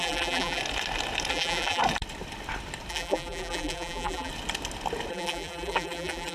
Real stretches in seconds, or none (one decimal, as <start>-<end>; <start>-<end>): 0.6-1.3; 1.8-2.9; 4.3-5.1